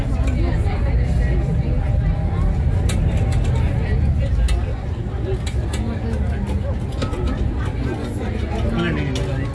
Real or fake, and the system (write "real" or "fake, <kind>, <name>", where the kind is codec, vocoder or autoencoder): real